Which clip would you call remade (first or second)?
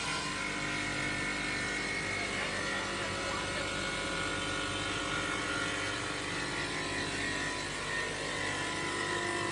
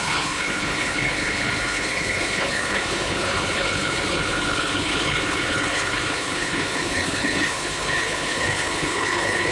second